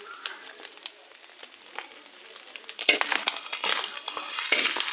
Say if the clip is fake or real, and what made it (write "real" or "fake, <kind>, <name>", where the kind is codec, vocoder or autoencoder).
real